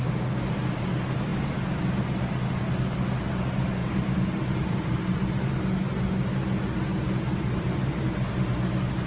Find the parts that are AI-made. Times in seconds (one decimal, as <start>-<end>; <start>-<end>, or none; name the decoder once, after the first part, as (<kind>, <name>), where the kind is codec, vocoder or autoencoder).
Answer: 1.3-2.0 (vocoder, BigVGAN v2); 3.8-5.2; 7.3-8.7